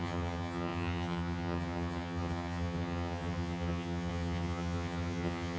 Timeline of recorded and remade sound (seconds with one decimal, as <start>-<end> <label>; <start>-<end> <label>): 0.0-5.6 remade